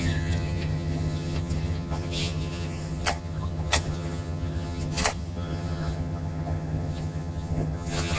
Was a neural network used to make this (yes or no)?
yes